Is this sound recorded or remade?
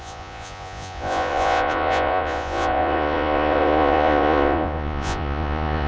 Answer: remade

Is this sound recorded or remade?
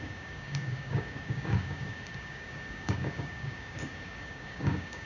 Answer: remade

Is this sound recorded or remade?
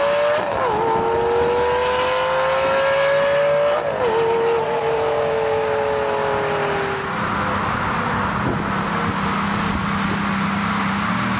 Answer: recorded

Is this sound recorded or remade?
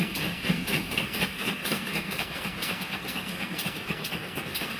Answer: remade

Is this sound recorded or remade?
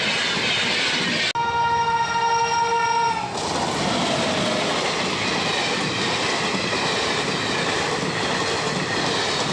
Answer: recorded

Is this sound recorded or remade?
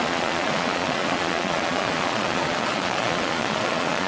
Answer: remade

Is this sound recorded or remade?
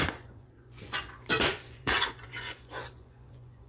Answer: remade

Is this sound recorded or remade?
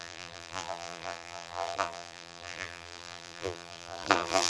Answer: remade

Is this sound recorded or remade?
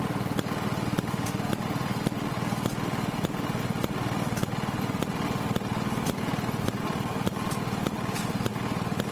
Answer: recorded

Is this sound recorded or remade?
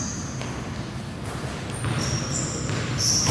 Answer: recorded